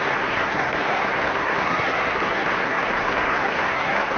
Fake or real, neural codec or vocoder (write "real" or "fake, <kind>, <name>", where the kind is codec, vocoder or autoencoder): fake, codec, SNAC